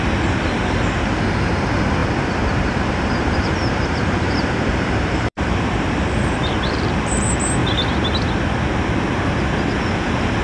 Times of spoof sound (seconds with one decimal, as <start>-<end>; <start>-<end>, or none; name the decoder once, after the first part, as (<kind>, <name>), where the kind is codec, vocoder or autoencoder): 0.0-7.6 (vocoder, BigVGAN v2)